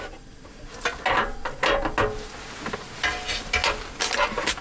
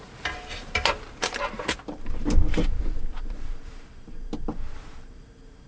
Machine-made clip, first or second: second